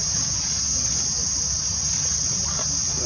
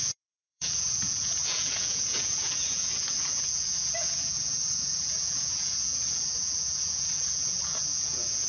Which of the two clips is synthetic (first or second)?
second